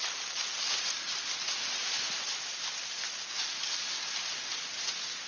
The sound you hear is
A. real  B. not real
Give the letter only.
A